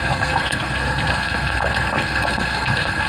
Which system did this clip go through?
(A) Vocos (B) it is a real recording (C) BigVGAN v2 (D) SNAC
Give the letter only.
D